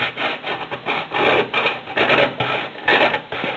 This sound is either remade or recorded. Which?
recorded